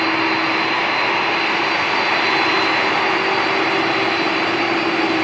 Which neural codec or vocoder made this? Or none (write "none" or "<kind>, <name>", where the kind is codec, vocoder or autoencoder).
none